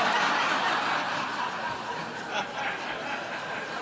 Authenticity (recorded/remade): recorded